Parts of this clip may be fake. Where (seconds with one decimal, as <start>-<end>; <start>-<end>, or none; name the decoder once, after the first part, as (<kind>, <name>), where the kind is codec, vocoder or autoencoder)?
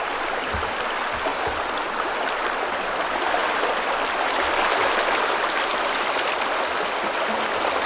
none